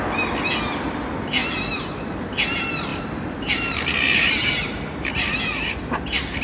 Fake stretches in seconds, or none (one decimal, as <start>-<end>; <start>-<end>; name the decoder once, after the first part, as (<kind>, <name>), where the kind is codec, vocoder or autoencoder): 1.4-2.2 (vocoder, BigVGAN v2); 2.9-6.4